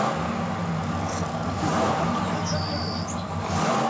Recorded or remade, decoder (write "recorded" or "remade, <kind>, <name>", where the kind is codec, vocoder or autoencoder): recorded